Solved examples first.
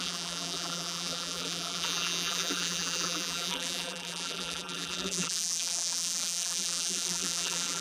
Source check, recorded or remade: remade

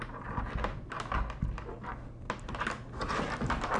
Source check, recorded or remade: recorded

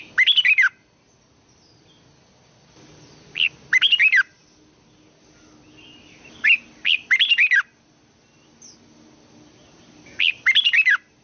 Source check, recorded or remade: recorded